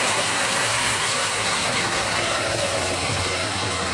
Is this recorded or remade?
remade